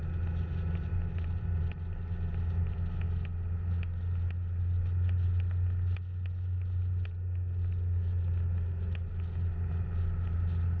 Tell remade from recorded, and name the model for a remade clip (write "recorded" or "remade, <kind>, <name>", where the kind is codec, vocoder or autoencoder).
recorded